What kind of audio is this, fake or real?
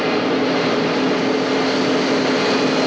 real